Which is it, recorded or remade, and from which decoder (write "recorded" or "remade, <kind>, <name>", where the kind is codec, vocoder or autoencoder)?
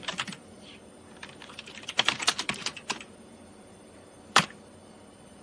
remade, vocoder, BigVGAN v2